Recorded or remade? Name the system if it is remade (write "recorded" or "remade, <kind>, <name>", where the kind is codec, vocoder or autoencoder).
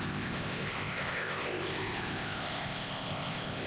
remade, codec, ZipCodec